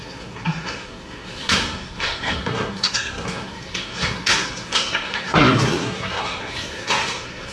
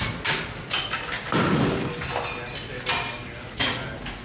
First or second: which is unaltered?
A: second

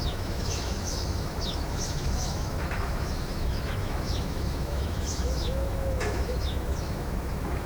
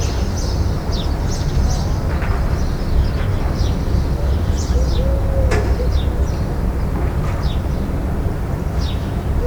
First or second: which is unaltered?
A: second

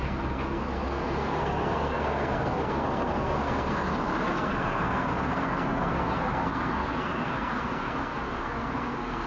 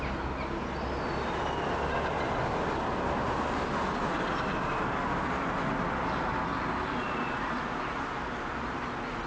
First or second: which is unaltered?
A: second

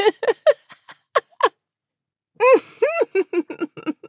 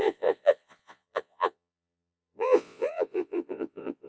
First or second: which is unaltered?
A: first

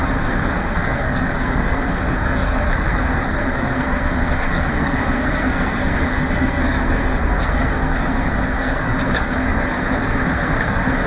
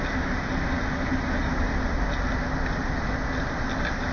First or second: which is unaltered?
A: second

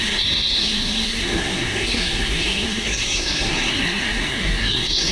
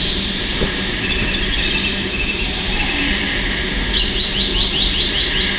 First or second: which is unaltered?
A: second